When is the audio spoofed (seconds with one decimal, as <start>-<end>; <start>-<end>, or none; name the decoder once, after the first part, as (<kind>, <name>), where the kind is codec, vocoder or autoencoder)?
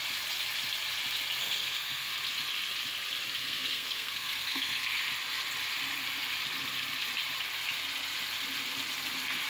1.4-2.1 (codec, SNAC); 3.4-4.9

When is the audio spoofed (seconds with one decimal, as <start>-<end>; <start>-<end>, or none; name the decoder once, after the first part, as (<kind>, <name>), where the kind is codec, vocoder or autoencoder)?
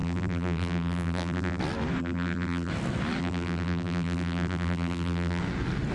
0.0-1.6 (vocoder, BigVGAN v2); 2.0-2.7; 3.2-5.4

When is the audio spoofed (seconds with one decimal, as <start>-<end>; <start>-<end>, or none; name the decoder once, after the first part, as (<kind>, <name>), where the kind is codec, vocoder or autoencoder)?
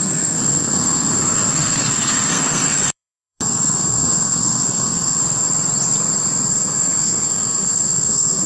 0.0-5.2 (codec, SNAC); 6.5-8.5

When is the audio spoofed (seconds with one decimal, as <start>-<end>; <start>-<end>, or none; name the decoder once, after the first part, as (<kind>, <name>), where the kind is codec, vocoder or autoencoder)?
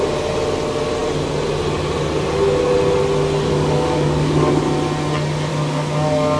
3.5-4.5 (codec, DAC); 5.5-6.4